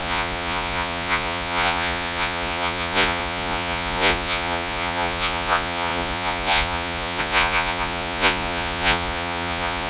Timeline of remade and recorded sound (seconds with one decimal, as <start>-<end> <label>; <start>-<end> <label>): 0.0-9.9 remade